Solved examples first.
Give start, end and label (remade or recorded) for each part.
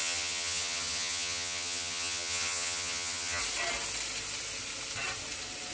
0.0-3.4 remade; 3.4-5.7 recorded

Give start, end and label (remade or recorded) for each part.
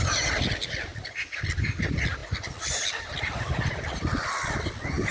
0.0-5.1 recorded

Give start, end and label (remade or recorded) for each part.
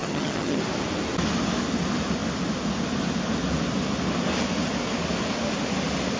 0.0-0.6 remade; 0.6-6.2 recorded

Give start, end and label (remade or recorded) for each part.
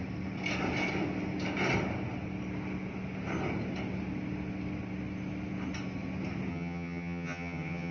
0.0-6.5 recorded; 6.5-7.9 remade